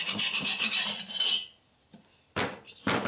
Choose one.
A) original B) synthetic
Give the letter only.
B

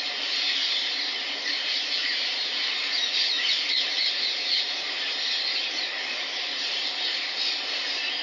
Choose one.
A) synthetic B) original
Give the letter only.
A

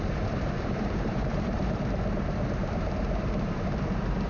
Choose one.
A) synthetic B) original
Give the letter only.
A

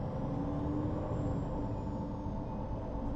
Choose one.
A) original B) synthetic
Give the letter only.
A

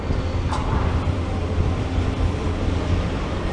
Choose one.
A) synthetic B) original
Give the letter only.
A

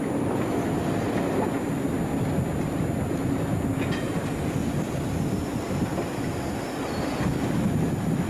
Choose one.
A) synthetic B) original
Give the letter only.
B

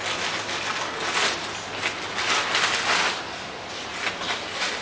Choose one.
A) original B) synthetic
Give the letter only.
A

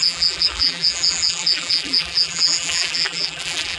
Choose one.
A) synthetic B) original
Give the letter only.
A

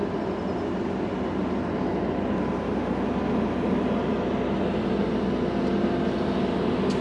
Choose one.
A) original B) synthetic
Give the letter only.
A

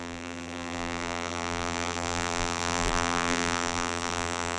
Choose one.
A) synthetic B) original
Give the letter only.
A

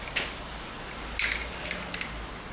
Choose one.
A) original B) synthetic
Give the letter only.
A